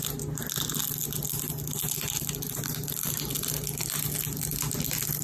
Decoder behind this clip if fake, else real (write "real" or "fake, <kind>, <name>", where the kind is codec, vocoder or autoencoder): real